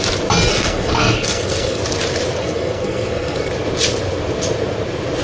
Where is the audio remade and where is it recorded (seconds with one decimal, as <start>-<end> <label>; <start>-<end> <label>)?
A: 0.0-0.5 recorded; 0.5-1.8 remade; 1.8-2.4 recorded; 2.4-3.5 remade; 3.5-5.2 recorded